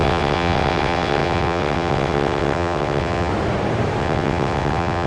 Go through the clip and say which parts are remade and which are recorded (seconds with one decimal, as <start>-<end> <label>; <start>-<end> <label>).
0.0-3.3 remade; 3.3-4.0 recorded; 4.0-5.1 remade